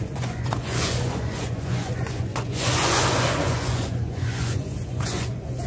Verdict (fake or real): fake